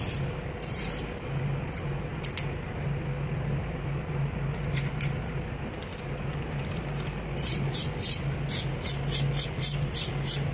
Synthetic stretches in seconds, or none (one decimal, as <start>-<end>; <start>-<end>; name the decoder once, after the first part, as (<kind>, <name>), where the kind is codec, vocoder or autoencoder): none